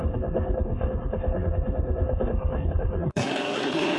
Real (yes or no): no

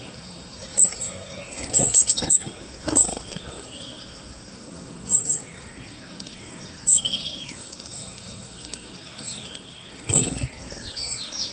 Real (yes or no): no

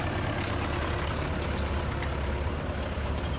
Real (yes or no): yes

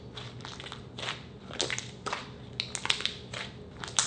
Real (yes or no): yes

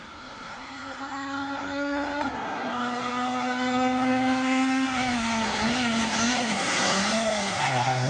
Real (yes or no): no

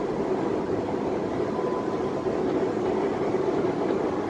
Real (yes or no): yes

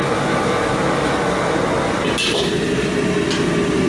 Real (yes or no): yes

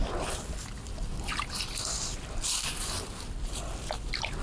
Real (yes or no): yes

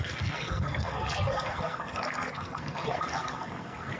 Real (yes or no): no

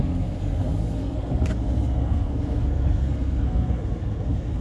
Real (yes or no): no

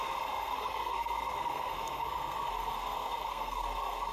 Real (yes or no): no